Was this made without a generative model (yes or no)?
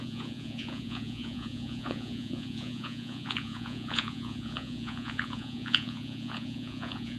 no